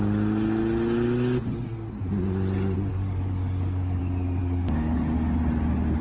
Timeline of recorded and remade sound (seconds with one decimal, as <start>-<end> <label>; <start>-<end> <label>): 0.0-2.9 recorded; 2.9-4.0 remade; 4.0-4.4 recorded; 4.4-5.0 remade; 5.0-6.0 recorded